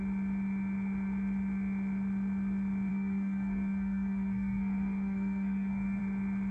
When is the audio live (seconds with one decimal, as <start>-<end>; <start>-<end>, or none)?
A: 0.0-2.9; 6.0-6.5